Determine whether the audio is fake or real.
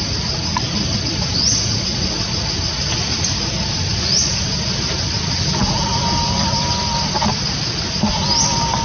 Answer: real